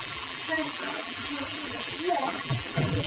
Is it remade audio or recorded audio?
remade